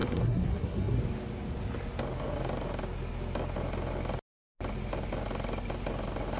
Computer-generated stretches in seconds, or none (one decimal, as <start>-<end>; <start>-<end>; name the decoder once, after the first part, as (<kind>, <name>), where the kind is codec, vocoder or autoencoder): 0.0-1.0 (codec, SNAC)